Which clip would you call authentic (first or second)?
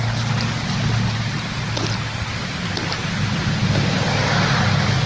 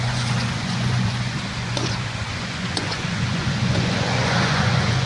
first